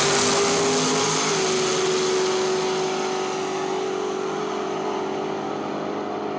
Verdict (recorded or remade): recorded